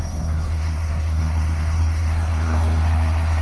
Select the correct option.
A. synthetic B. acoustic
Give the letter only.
A